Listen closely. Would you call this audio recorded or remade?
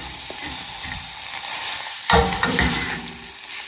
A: remade